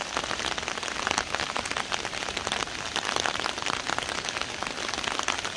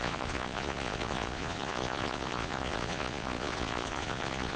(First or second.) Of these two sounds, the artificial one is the second